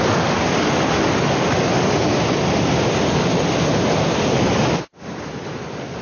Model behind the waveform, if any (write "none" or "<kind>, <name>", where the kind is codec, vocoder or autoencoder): none